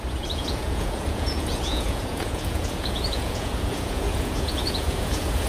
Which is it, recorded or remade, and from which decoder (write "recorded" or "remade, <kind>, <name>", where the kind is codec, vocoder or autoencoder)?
remade, vocoder, Vocos